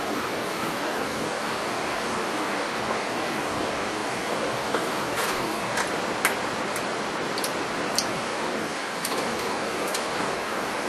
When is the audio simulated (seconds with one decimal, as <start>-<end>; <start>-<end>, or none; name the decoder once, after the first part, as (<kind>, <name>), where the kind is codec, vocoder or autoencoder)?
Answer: 0.0-5.8 (codec, DAC); 8.1-10.9